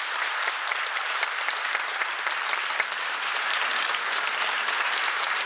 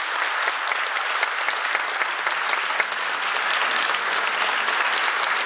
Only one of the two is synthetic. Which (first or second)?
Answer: first